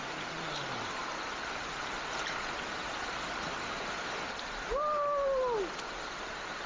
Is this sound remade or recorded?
recorded